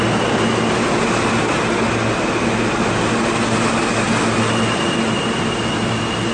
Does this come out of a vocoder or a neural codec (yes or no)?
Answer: no